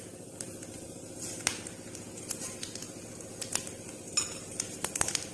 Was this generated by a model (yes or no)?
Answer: no